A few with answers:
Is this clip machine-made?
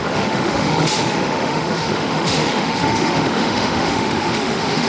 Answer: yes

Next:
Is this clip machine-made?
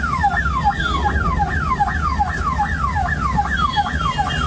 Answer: no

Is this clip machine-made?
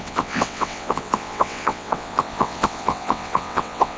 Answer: yes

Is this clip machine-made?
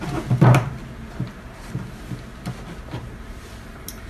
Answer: no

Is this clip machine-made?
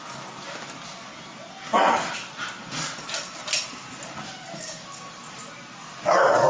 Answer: no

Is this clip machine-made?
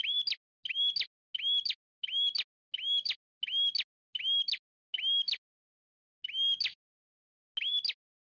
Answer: no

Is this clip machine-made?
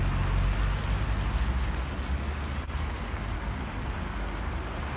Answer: no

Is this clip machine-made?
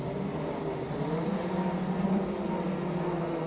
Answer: no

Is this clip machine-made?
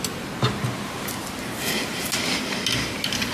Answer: no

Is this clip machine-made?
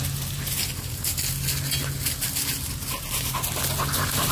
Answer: no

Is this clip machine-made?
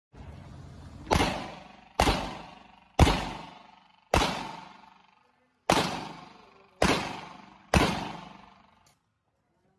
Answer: no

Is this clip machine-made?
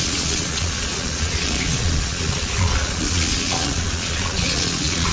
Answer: yes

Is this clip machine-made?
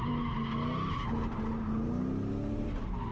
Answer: no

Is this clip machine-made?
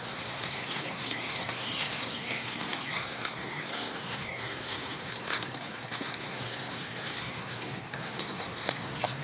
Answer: yes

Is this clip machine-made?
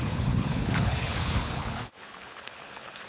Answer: yes